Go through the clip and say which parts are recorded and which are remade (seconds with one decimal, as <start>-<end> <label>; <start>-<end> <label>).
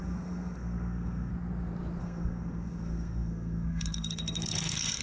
0.0-1.3 remade; 1.3-2.0 recorded; 2.0-5.0 remade